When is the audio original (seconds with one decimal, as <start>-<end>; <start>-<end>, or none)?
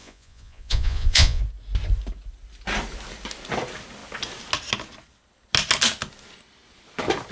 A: 1.4-7.3